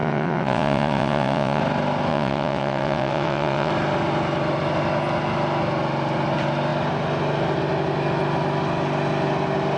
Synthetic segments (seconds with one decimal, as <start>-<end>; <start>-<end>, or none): 0.0-1.6; 2.1-3.7